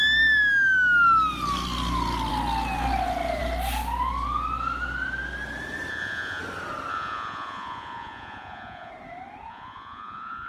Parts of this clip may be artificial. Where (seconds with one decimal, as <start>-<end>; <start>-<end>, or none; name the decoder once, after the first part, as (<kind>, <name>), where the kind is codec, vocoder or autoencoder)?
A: 5.9-6.4 (vocoder, Vocos); 6.9-8.9; 9.5-10.5

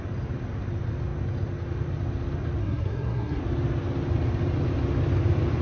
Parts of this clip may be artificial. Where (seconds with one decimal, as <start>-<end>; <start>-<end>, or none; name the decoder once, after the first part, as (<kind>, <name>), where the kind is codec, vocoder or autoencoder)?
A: 2.6-3.4 (codec, SNAC)

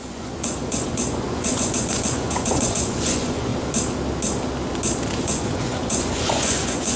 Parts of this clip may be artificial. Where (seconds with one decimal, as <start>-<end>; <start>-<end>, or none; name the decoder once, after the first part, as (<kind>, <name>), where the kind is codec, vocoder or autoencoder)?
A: 0.0-3.5 (vocoder, Vocos); 5.2-7.0

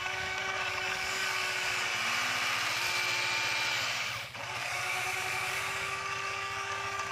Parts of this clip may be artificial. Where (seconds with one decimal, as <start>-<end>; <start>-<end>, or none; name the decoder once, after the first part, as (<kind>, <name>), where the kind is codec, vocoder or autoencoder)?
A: 0.0-1.9 (codec, DAC); 3.7-7.1

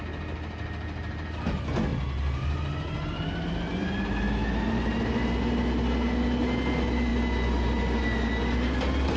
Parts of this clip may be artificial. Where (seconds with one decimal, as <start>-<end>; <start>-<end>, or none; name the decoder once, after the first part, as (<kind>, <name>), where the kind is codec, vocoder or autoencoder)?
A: none

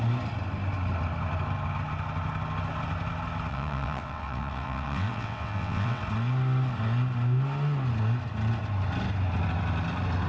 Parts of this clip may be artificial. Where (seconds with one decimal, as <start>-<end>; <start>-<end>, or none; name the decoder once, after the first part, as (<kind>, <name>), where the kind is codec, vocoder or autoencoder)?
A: 3.5-6.0 (vocoder, WaveNeXt)

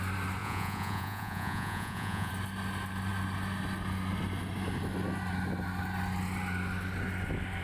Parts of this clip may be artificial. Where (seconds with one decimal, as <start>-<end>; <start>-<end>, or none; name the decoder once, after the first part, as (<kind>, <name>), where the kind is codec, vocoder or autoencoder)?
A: 0.4-2.3 (vocoder, Vocos)